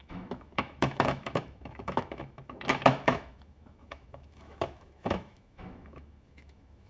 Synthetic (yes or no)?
yes